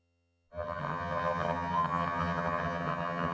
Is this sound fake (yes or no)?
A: yes